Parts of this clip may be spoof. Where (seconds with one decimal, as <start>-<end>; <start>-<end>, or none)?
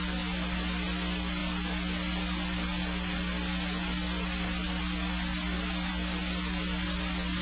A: none